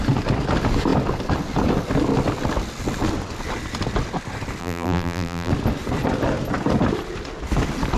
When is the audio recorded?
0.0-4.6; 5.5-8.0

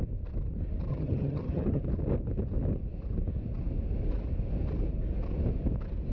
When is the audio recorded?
0.0-0.9; 1.8-6.1